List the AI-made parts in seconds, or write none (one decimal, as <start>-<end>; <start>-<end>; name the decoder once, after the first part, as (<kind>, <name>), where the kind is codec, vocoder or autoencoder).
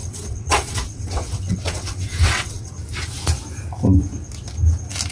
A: 0.0-2.7 (vocoder, WaveNeXt)